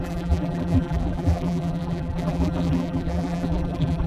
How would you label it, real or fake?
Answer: fake